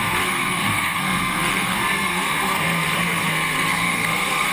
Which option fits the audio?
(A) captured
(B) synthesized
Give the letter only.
B